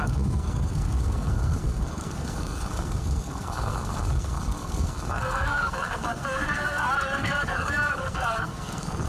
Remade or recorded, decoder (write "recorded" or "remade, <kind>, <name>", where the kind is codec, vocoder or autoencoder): remade, codec, SNAC